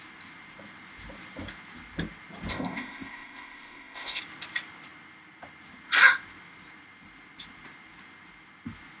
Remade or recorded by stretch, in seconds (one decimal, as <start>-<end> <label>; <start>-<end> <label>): 0.0-2.5 recorded; 2.5-4.2 remade; 4.2-9.0 recorded